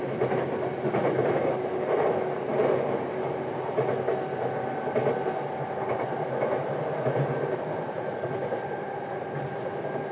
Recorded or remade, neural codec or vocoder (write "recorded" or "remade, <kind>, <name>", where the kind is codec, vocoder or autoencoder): recorded